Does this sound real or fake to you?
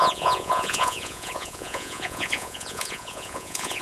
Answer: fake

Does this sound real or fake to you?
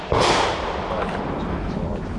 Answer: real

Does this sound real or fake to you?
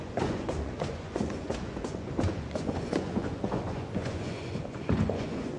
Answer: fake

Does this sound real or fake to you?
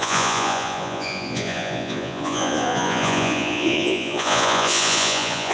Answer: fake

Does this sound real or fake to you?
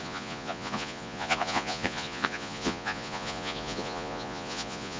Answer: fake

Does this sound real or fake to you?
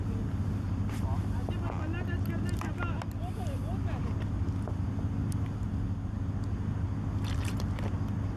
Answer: real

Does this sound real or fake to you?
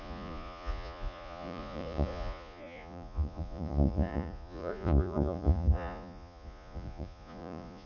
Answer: fake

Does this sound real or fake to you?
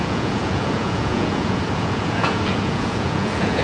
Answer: fake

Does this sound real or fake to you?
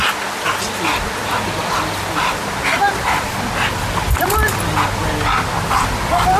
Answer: real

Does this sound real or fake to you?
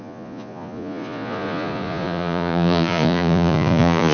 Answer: fake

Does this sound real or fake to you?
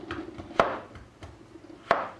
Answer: real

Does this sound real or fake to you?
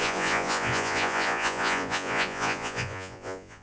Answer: fake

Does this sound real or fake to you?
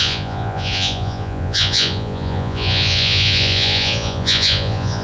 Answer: fake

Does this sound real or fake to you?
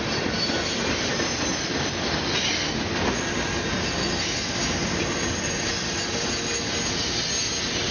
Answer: real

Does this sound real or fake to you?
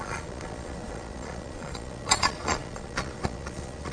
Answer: fake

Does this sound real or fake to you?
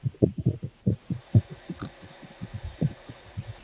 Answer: fake